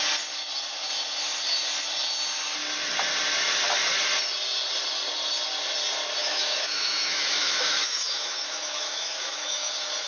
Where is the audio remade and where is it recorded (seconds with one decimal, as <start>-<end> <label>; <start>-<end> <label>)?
0.0-6.2 recorded; 6.2-9.7 remade; 9.7-10.1 recorded